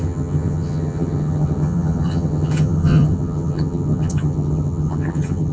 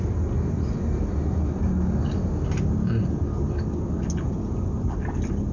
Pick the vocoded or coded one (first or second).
first